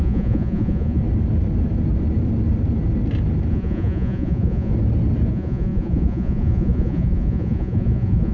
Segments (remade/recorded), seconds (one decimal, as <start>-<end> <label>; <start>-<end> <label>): 0.0-1.0 remade; 1.0-3.5 recorded; 3.5-4.7 remade; 4.7-5.3 recorded; 5.3-8.3 remade